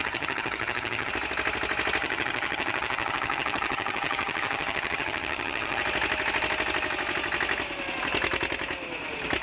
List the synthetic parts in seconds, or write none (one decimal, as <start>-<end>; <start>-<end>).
0.0-1.1; 2.0-5.8